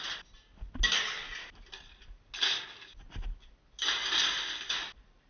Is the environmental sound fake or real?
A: real